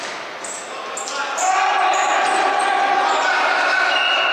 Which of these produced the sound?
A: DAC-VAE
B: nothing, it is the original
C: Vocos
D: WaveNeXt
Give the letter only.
B